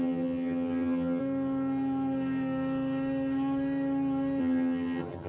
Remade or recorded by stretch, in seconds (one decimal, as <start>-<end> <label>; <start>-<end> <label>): 0.0-1.2 remade; 1.2-4.4 recorded; 4.4-5.3 remade